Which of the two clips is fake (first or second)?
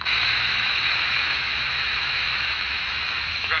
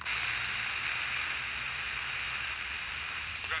first